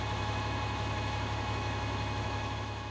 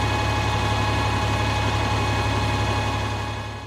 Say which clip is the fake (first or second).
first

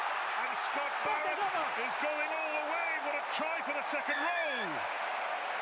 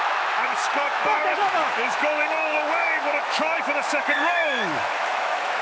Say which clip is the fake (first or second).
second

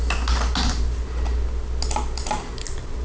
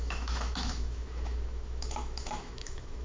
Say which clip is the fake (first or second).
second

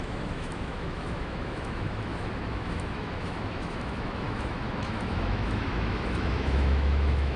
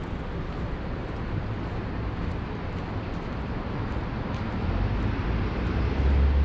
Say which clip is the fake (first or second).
first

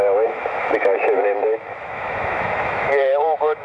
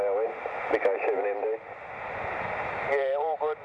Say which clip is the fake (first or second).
first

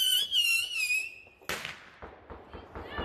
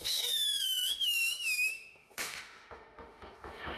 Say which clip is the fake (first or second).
second